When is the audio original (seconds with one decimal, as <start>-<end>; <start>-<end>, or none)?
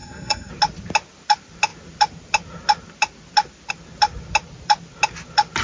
0.5-5.6